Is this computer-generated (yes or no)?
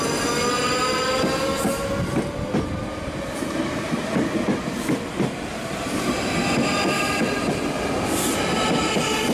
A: no